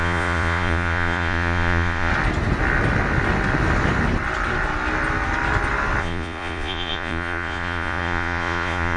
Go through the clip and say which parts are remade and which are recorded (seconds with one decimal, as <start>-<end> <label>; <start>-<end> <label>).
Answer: 0.0-2.1 remade; 2.1-6.0 recorded; 6.0-9.0 remade